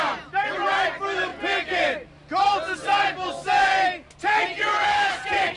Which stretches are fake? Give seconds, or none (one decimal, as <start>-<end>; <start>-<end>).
0.0-1.3; 4.4-5.6

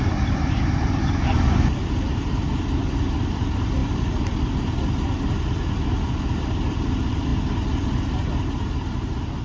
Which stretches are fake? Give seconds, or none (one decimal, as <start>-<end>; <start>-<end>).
0.0-7.3